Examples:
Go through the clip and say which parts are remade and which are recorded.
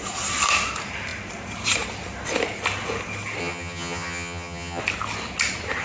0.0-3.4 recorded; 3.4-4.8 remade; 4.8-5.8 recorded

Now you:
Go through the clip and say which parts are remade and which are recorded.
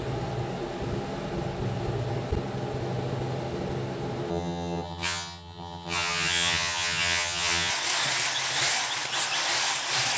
0.0-4.3 recorded; 4.3-7.7 remade; 7.7-10.2 recorded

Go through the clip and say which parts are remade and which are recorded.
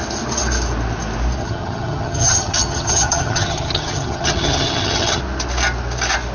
0.0-1.4 recorded; 1.4-5.2 remade; 5.2-6.3 recorded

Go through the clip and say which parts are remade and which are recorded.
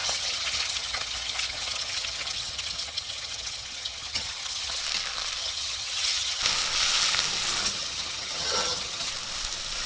0.0-4.8 remade; 4.8-5.4 recorded; 5.4-6.4 remade; 6.4-7.6 recorded; 7.6-9.1 remade; 9.1-9.9 recorded